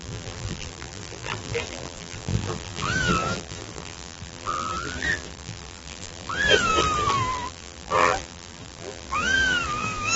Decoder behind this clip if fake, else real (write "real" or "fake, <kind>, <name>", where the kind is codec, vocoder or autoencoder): fake, vocoder, BigVGAN v2